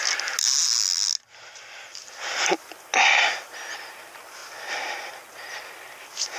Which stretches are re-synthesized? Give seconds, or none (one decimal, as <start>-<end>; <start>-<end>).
none